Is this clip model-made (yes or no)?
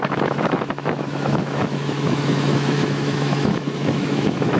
yes